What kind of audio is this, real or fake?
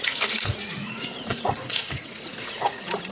fake